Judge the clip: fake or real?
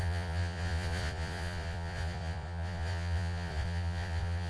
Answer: fake